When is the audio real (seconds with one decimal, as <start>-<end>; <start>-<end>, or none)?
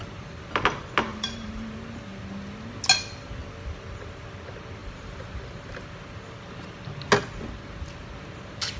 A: 0.0-1.1; 1.7-4.8; 5.9-8.8